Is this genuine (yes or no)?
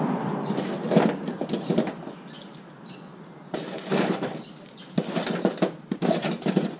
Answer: no